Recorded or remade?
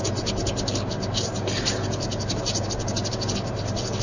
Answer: recorded